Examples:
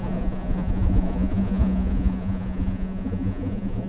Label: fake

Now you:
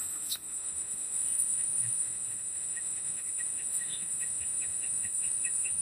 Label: fake